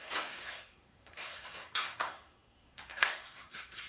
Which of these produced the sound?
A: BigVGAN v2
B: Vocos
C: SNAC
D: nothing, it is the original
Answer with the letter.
C